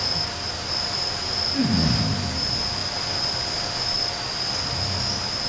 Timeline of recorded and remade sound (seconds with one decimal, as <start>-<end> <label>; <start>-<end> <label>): 0.0-5.5 recorded